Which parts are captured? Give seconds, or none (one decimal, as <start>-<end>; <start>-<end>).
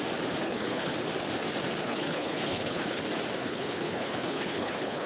0.0-0.4; 0.9-1.8; 3.0-3.4